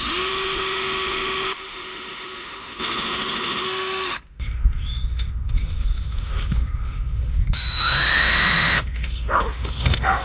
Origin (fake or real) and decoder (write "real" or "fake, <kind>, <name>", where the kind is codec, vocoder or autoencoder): fake, autoencoder, DAC-VAE